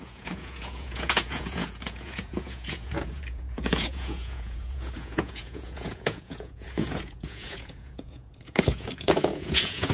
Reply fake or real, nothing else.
fake